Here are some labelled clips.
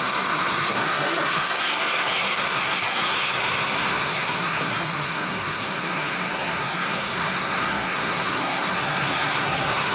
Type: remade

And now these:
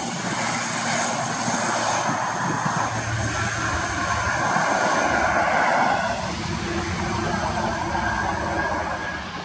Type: recorded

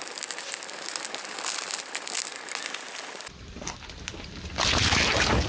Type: recorded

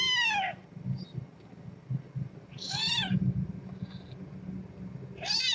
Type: recorded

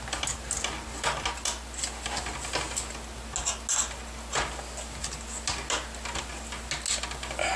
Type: recorded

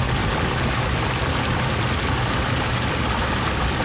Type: recorded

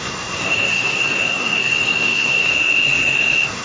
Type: remade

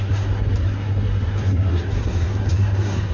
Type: remade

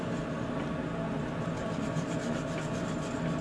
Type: recorded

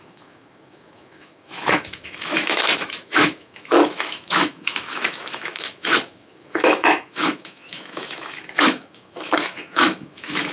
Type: remade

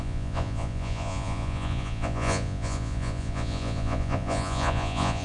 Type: remade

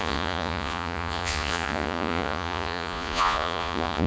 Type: remade